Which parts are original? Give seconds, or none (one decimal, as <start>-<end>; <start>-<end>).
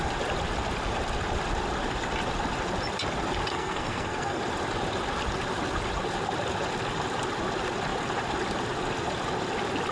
0.0-3.5; 4.4-9.9